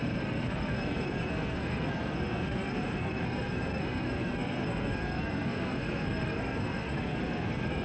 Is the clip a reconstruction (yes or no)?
yes